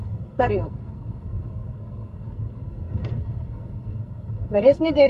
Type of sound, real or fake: fake